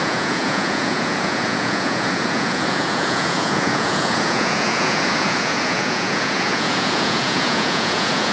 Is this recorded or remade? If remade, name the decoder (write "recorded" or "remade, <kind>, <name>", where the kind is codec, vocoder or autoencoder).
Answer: remade, vocoder, Vocos